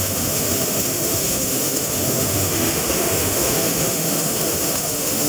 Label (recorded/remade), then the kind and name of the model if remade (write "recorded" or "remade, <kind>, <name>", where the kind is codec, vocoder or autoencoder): remade, autoencoder, DAC-VAE